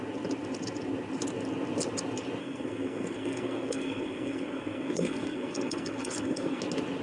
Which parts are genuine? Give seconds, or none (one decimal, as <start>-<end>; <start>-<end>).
0.0-2.4; 6.6-7.0